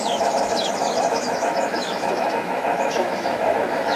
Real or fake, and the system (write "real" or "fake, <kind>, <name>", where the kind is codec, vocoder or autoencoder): fake, autoencoder, DAC-VAE